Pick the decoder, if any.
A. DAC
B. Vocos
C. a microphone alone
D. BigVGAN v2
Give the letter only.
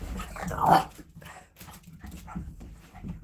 C